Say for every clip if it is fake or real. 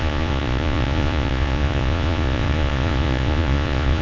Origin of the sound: fake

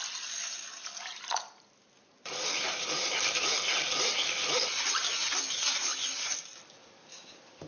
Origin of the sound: real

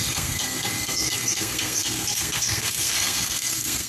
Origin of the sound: fake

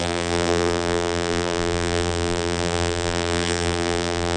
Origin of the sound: fake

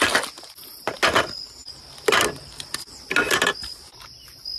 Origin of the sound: real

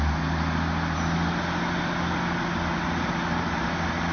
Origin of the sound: real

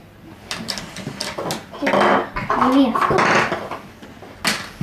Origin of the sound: real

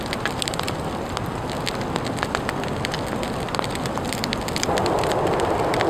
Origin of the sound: real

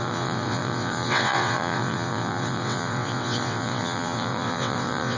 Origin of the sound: fake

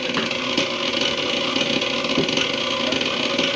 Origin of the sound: real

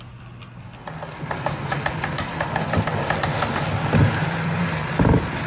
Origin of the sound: real